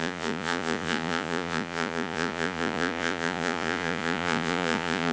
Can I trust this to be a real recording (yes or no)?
no